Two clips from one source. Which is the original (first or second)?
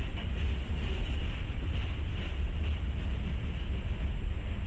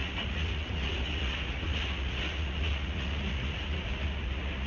first